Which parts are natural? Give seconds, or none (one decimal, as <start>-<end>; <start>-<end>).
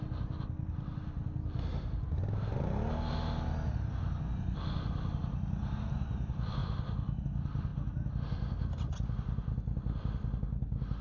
0.0-11.0